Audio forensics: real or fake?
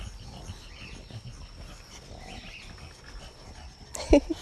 real